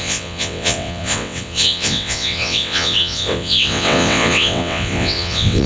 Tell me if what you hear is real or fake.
fake